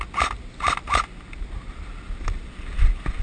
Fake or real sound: real